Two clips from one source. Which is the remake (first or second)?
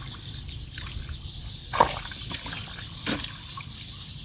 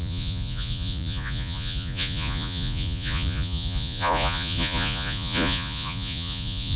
second